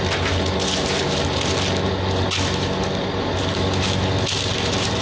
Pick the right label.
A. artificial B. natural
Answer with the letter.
B